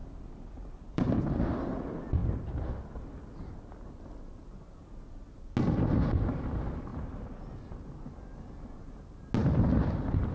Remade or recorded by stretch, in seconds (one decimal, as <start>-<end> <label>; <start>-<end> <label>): 0.0-1.2 remade; 1.2-6.9 recorded; 6.9-7.7 remade; 7.7-9.4 recorded; 9.4-10.3 remade